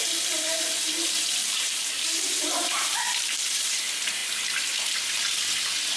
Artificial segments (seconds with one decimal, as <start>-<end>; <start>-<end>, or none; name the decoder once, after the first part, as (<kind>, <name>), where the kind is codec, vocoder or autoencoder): 1.4-3.8 (vocoder, BigVGAN v2)